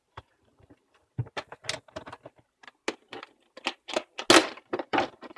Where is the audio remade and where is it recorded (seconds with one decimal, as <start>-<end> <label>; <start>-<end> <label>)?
0.0-1.2 remade; 1.2-4.4 recorded; 4.4-5.4 remade